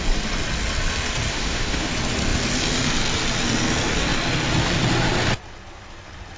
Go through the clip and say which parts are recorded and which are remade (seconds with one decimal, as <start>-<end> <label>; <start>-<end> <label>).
0.0-1.3 recorded; 1.3-1.9 remade; 1.9-6.4 recorded